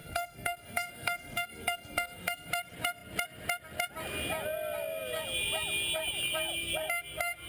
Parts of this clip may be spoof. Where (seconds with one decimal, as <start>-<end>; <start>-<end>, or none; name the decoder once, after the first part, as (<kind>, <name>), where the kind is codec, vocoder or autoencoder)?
0.0-2.5 (codec, SNAC)